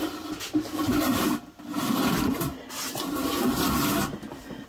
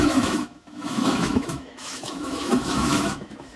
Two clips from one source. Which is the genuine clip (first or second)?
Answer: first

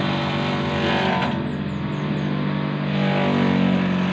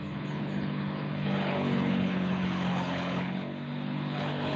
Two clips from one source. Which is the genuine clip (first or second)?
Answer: first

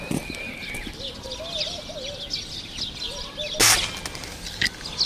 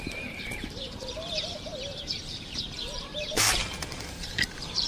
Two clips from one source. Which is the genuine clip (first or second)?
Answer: first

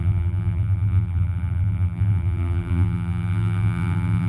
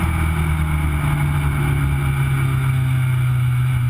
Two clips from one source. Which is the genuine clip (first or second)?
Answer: second